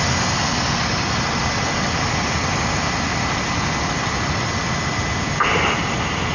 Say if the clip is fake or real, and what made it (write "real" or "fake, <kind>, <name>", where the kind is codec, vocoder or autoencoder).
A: real